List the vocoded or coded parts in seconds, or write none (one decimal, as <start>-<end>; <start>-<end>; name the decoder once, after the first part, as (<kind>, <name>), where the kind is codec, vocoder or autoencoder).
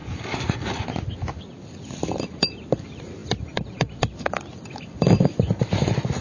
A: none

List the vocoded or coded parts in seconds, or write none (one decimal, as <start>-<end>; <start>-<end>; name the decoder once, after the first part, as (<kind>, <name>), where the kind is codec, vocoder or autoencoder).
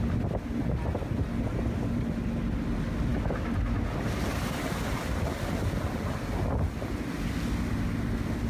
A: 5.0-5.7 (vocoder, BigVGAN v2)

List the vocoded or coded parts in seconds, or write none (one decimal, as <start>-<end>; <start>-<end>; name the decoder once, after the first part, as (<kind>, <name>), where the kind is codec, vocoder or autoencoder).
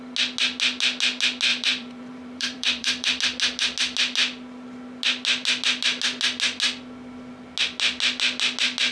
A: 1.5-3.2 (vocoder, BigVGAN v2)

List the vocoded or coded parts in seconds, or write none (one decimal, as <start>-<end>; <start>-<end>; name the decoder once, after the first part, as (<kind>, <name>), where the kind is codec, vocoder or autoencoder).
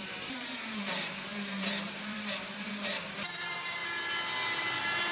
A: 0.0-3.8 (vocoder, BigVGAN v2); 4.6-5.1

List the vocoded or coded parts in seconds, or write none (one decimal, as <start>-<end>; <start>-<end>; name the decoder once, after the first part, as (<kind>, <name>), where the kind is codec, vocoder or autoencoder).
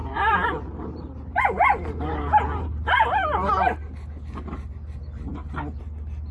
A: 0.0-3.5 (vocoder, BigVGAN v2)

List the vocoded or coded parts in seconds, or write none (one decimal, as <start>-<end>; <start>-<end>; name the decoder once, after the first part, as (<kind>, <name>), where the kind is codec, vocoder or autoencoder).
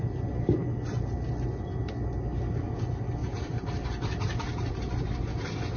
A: 3.2-5.8 (vocoder, BigVGAN v2)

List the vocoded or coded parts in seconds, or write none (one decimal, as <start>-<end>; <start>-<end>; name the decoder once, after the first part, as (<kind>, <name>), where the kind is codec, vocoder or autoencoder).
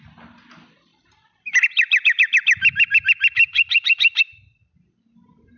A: 0.9-4.2 (vocoder, BigVGAN v2)